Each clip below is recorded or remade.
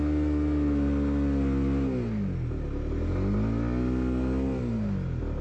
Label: recorded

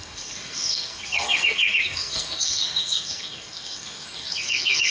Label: remade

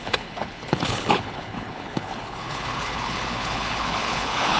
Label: remade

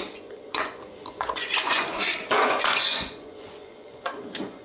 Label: remade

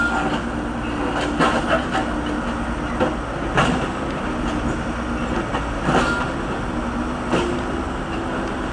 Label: recorded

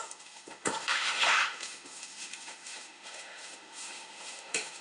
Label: remade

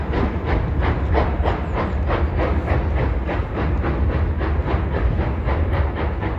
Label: recorded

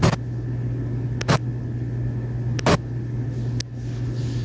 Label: recorded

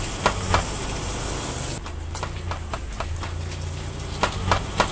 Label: recorded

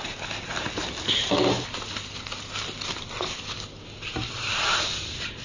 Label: recorded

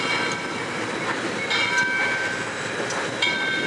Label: recorded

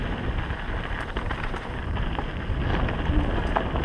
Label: recorded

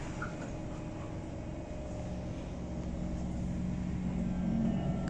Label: recorded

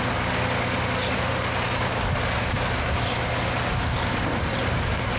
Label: recorded